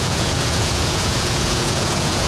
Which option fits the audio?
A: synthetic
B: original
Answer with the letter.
A